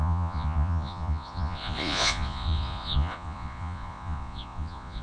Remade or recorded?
remade